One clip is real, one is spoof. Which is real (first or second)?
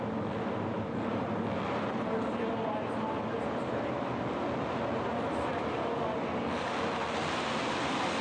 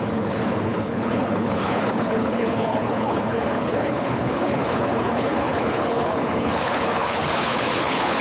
first